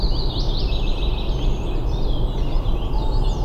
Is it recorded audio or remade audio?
recorded